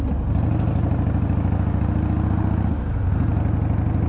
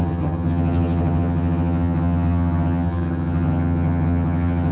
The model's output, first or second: second